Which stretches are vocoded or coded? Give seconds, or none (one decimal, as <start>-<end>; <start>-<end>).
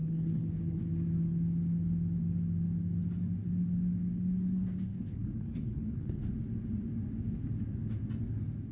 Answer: 0.0-0.8; 4.9-6.2